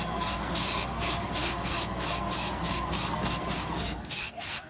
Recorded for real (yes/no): no